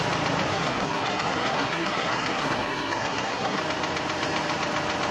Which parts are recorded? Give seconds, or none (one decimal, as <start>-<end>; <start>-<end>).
0.0-0.5; 3.6-5.1